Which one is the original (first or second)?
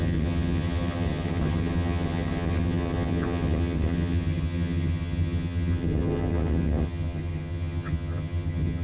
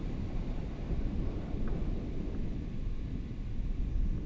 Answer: second